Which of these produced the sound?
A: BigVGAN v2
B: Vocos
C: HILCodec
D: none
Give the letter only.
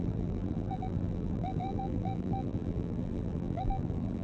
A